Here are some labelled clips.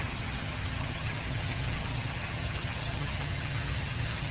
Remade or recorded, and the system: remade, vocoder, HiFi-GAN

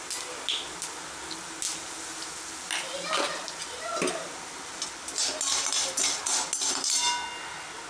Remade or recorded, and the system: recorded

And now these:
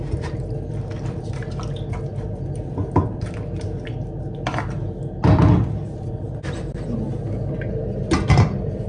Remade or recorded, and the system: recorded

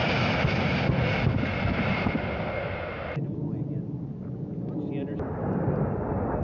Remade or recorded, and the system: recorded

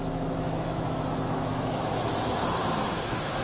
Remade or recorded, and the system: remade, autoencoder, DAC-VAE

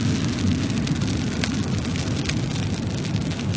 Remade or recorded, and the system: recorded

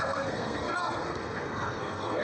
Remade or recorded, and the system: remade, codec, SNAC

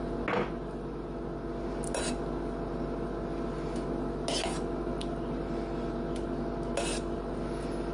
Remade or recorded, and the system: recorded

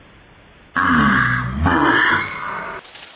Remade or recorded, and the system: recorded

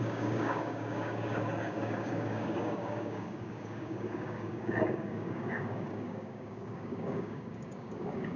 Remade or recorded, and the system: remade, codec, DAC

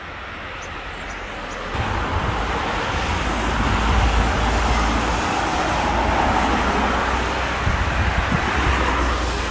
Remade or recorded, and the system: recorded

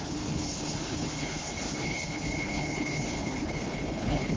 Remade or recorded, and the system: remade, codec, HILCodec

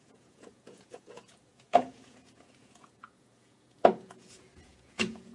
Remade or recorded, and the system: remade, vocoder, Vocos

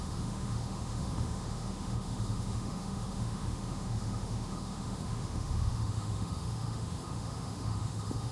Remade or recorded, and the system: remade, autoencoder, DAC-VAE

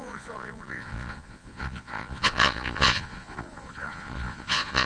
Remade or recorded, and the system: remade, vocoder, Vocos